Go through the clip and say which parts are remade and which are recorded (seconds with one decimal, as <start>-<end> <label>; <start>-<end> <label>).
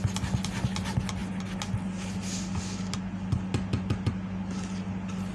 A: 0.0-5.3 recorded